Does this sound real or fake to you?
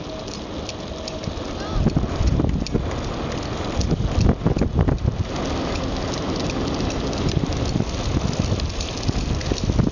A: real